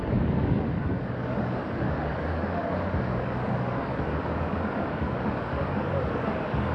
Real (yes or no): no